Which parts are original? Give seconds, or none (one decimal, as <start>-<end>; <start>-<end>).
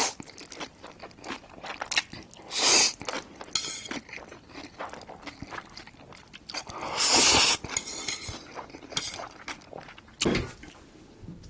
1.6-11.5